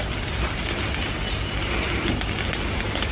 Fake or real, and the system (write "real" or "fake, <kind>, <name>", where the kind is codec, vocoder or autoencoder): real